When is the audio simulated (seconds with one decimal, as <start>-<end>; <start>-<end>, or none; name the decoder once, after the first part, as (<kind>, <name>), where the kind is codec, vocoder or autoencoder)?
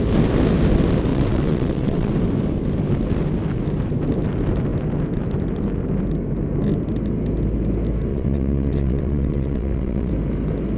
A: 1.1-2.1 (vocoder, WaveNeXt); 8.1-10.1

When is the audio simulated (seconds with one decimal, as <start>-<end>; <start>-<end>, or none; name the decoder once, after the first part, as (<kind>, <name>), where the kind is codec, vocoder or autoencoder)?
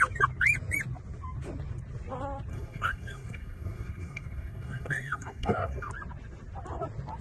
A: 2.5-5.9 (codec, SNAC)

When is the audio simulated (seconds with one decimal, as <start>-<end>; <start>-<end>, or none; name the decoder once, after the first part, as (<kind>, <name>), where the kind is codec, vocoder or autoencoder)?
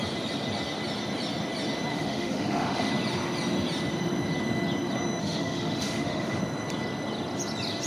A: 1.9-2.9 (autoencoder, DAC-VAE); 5.2-6.4